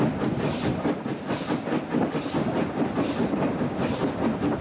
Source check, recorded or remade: recorded